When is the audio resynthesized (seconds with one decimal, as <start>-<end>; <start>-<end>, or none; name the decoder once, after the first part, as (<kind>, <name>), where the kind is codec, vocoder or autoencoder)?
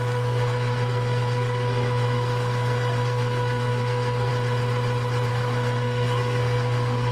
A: 0.0-4.3 (codec, SNAC); 5.3-7.1